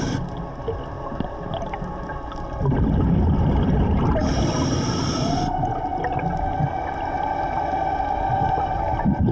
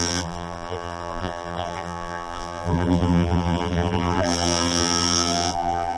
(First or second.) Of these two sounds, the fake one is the second